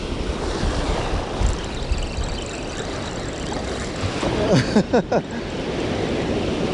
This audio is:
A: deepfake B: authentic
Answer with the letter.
B